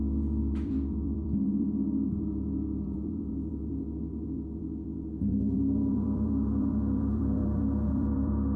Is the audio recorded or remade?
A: remade